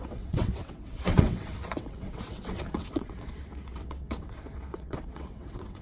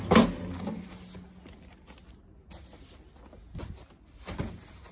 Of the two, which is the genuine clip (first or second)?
second